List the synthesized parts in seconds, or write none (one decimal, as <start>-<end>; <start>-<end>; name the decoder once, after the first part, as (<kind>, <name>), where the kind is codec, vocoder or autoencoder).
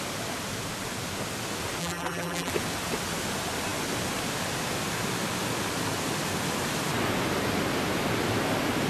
1.8-2.5 (vocoder, BigVGAN v2)